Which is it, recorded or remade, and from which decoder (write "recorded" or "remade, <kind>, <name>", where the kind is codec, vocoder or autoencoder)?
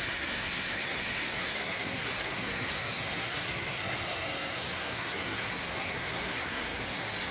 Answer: remade, codec, SNAC